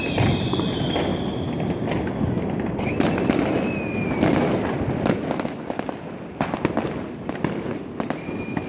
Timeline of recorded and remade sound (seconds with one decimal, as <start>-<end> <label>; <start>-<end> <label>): 0.0-8.7 recorded